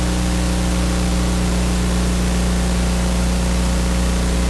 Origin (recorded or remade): recorded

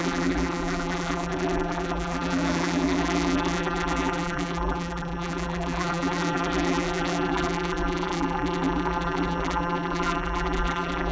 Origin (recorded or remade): remade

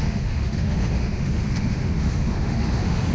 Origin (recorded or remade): remade